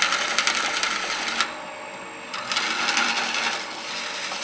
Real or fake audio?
real